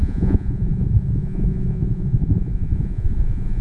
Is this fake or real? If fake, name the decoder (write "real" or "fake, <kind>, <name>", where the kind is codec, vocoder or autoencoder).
fake, vocoder, Vocos